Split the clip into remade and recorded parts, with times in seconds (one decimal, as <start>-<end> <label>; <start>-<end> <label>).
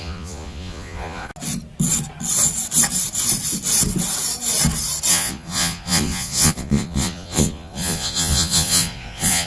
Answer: 0.0-1.3 remade; 1.3-5.1 recorded; 5.1-9.5 remade